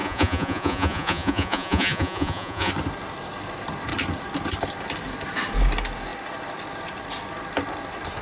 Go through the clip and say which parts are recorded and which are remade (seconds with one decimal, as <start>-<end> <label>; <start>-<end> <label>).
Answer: 0.0-2.7 remade; 2.7-8.2 recorded

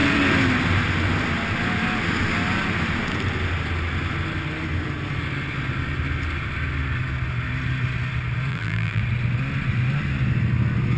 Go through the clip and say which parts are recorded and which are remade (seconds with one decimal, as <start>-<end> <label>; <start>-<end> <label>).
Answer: 0.0-8.5 recorded; 8.5-9.0 remade; 9.0-11.0 recorded

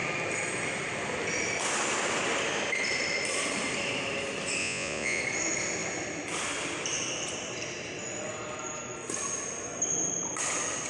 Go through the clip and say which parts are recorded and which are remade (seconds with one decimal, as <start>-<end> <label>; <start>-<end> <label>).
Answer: 0.0-4.6 recorded; 4.6-5.2 remade; 5.2-10.9 recorded

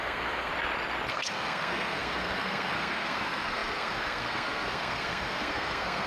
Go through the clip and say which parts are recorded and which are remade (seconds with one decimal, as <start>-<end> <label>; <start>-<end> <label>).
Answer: 0.0-0.5 remade; 0.5-1.1 recorded; 1.1-6.1 remade

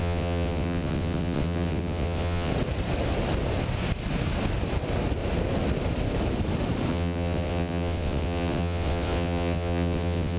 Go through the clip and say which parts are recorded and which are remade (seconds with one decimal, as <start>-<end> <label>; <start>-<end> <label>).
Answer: 0.0-2.5 remade; 2.5-6.9 recorded; 6.9-10.4 remade

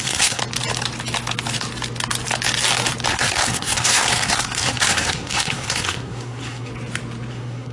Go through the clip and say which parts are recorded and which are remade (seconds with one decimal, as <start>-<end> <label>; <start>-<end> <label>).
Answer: 0.0-0.4 remade; 0.4-3.1 recorded; 3.1-6.7 remade; 6.7-7.3 recorded; 7.3-7.7 remade